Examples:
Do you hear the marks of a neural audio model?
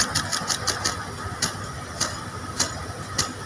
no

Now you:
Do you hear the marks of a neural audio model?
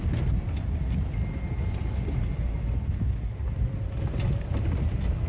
no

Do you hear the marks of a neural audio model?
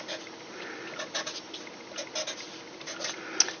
no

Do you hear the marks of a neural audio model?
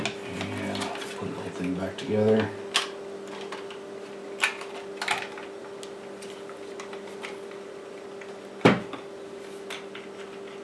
no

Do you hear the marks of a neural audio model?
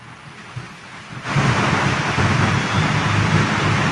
no